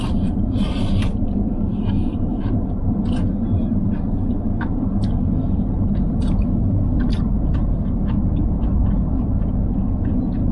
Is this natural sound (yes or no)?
no